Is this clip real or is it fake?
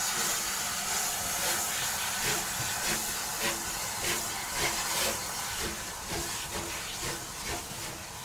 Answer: real